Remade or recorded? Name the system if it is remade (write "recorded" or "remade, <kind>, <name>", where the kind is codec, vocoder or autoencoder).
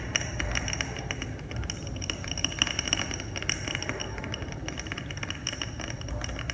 recorded